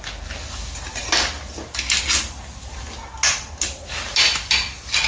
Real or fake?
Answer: real